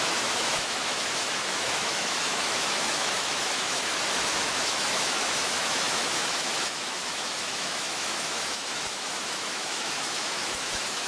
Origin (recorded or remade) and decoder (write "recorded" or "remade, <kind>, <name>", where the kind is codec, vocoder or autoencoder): remade, autoencoder, DAC-VAE